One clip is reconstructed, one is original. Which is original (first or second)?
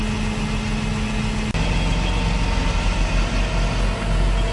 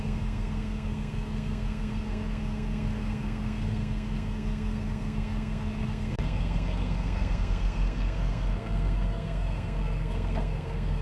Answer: first